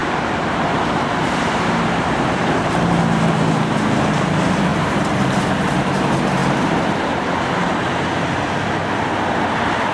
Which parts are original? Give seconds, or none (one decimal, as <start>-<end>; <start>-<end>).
3.0-4.7; 5.4-6.4; 7.8-9.9